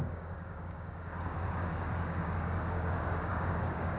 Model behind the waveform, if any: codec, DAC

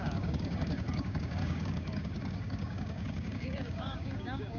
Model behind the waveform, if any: codec, DAC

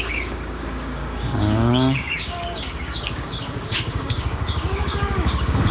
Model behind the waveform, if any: codec, DAC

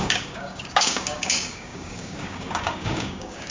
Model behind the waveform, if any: codec, DAC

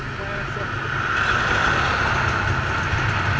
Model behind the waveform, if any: none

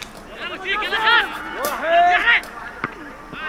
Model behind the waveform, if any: none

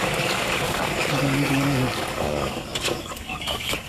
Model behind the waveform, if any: codec, DAC